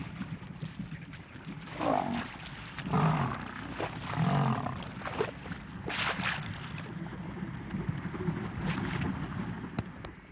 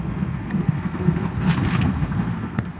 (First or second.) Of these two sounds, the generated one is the second